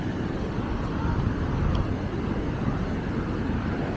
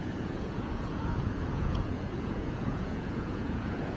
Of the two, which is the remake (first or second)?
second